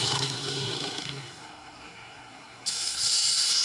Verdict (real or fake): fake